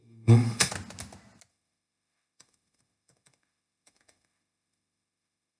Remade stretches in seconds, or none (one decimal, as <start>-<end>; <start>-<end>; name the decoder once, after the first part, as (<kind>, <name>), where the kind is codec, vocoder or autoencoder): 0.0-0.7 (autoencoder, DAC-VAE); 1.5-5.6